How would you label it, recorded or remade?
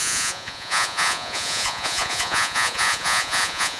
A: remade